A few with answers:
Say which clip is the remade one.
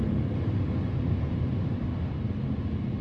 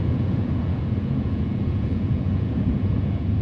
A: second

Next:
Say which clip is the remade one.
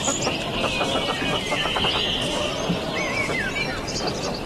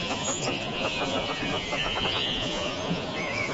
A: second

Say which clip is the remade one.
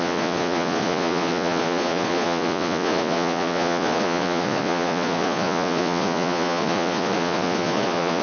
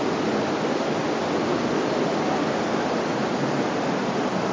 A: first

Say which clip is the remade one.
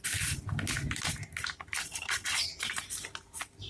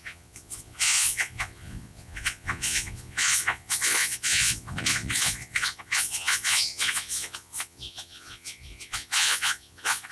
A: second